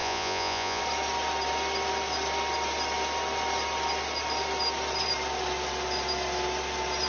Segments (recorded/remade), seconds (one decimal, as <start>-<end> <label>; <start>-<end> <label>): 0.0-0.8 remade; 0.8-7.1 recorded